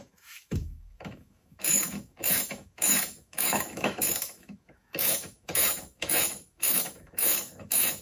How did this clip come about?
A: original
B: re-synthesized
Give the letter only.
B